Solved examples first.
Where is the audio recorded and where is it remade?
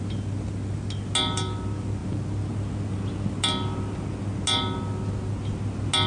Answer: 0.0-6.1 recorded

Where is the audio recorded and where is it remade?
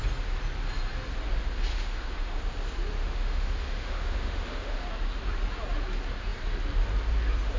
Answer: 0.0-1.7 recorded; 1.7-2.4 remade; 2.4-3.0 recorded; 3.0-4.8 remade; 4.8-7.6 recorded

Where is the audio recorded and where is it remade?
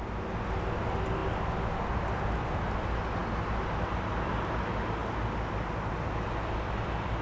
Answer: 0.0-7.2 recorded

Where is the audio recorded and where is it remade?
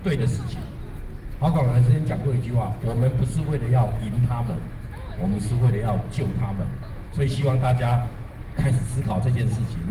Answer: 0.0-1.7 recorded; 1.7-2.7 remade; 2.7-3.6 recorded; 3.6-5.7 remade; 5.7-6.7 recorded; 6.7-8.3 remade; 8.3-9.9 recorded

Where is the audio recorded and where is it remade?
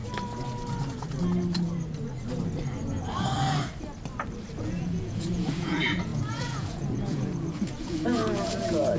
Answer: 0.0-4.6 recorded; 4.6-9.0 remade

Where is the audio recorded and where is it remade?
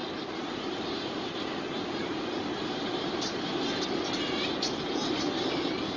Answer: 0.0-1.4 remade; 1.4-2.0 recorded; 2.0-4.9 remade; 4.9-6.0 recorded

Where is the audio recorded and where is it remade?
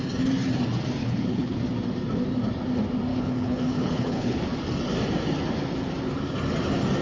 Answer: 0.0-1.0 recorded; 1.0-1.6 remade; 1.6-3.1 recorded; 3.1-4.4 remade; 4.4-7.0 recorded